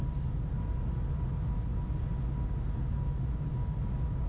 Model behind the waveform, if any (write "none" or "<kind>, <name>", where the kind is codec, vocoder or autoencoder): none